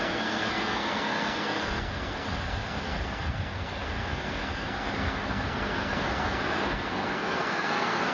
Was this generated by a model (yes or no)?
yes